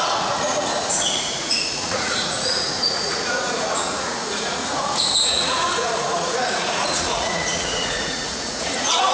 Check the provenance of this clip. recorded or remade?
remade